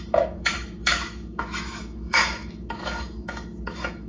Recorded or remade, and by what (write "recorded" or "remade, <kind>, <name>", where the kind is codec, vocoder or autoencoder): remade, autoencoder, DAC-VAE